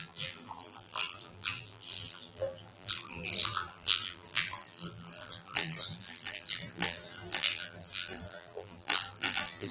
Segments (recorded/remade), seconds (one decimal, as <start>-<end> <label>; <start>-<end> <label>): 0.0-9.7 remade